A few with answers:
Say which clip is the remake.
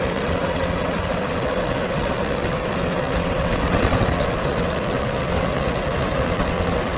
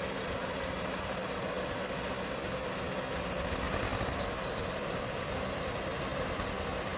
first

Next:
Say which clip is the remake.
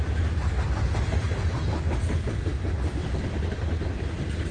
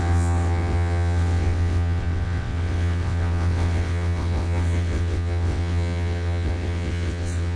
second